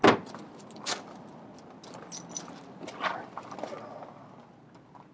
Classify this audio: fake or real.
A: real